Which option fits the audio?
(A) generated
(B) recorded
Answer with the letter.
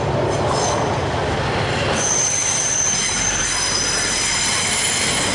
B